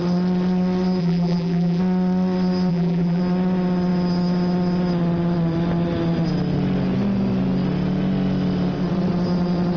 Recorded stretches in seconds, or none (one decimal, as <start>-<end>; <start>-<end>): 0.0-1.0; 1.8-2.7; 3.2-9.8